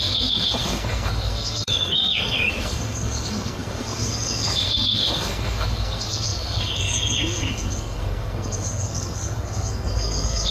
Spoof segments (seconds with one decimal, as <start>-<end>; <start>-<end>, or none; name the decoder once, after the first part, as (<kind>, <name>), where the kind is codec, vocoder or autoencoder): 0.0-10.5 (codec, SNAC)